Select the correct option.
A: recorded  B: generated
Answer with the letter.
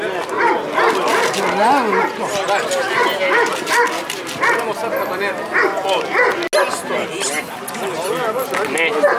A